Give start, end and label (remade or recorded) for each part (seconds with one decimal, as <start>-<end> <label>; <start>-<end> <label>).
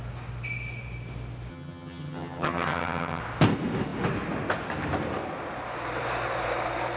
0.0-1.5 recorded; 1.5-3.2 remade; 3.2-7.0 recorded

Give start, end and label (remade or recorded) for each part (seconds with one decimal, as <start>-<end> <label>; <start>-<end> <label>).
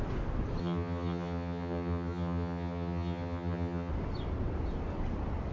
0.0-0.6 recorded; 0.6-3.9 remade; 3.9-5.5 recorded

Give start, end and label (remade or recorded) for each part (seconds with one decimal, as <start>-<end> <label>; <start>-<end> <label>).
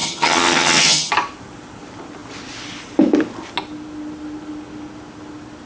0.0-1.1 remade; 1.1-5.7 recorded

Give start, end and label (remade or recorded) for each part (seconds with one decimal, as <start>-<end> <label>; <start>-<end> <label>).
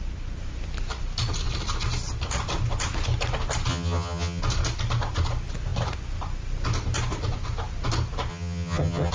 0.0-3.7 recorded; 3.7-4.4 remade; 4.4-8.3 recorded; 8.3-9.1 remade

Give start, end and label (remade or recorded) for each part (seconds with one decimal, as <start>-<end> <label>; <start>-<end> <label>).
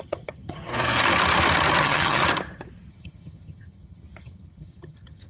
0.0-0.7 remade; 0.7-1.8 recorded; 1.8-2.2 remade; 2.2-2.9 recorded; 2.9-5.3 remade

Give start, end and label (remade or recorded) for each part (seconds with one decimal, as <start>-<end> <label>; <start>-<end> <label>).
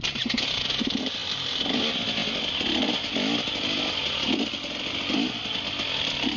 0.0-6.4 recorded